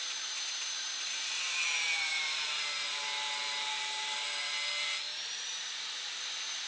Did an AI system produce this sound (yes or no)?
yes